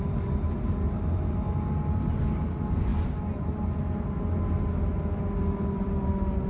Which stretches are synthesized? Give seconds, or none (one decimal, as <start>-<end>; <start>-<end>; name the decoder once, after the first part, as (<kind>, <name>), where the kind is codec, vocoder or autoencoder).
none